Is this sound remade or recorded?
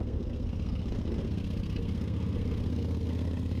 remade